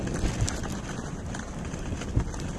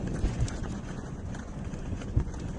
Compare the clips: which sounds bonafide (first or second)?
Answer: first